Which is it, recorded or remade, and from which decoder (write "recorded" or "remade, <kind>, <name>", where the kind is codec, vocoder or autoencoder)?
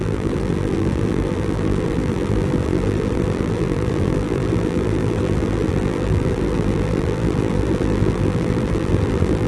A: remade, vocoder, BigVGAN v2